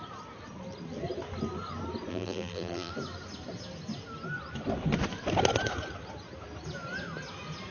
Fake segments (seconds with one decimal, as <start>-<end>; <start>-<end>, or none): 2.1-2.9